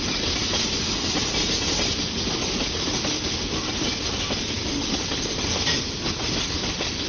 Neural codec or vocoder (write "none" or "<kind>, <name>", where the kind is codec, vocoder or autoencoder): none